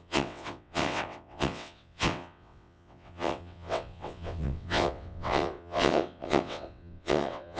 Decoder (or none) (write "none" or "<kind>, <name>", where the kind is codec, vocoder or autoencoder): vocoder, WaveNeXt